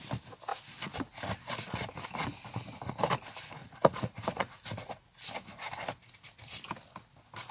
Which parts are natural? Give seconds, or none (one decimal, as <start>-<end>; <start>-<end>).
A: 0.0-3.6; 5.1-7.5